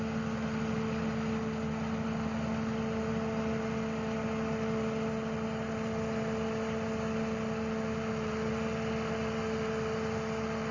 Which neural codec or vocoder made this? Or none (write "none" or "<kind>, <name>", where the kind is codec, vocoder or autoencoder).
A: none